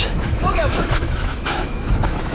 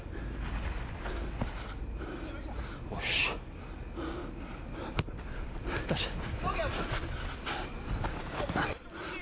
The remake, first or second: first